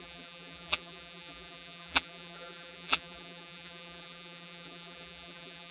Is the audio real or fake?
fake